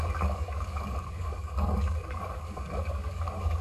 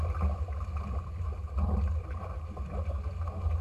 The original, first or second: second